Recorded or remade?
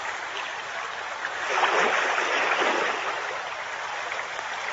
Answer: remade